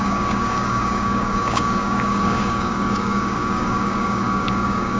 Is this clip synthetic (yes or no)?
yes